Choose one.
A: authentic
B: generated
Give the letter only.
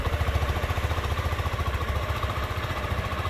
B